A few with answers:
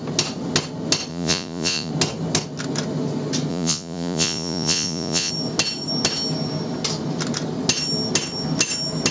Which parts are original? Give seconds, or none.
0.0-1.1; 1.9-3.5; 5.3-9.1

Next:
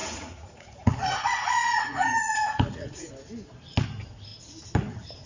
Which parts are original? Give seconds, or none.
3.1-5.3

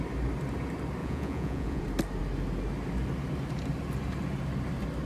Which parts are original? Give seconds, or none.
0.0-1.0; 1.8-5.1

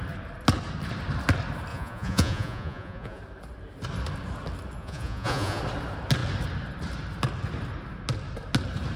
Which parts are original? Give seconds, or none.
0.0-1.7; 3.2-4.8; 5.6-9.0